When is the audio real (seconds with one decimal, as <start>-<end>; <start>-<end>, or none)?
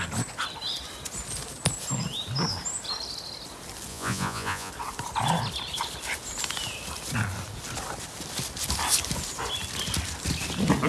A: 0.0-3.9; 4.7-10.9